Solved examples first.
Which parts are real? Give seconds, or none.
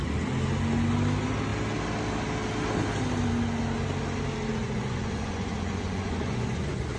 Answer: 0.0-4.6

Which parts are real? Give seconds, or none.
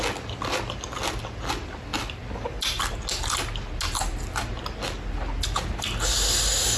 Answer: 0.0-6.8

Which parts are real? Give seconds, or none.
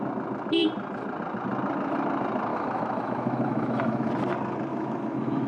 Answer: 0.0-2.5; 4.1-4.7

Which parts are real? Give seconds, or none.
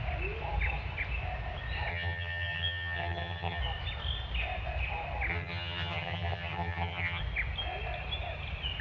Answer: 0.0-1.9; 3.6-5.3; 7.2-8.8